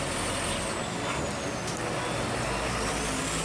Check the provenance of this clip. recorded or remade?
recorded